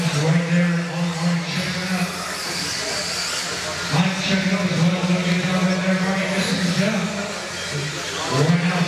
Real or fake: real